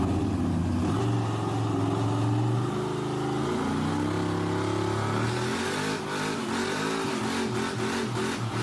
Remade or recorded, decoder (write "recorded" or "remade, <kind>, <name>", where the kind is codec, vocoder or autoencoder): recorded